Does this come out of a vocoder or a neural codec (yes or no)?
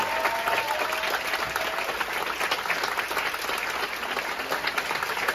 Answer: no